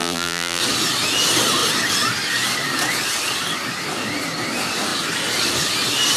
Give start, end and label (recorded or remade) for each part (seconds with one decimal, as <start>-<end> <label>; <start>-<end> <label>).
0.0-0.6 remade; 0.6-6.2 recorded